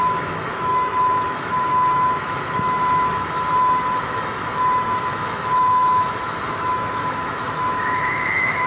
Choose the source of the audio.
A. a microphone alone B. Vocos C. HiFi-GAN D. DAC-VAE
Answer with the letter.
D